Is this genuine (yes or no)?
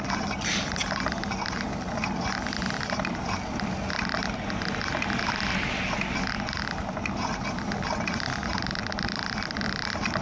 yes